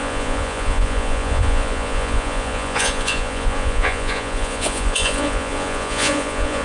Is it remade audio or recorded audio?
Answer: remade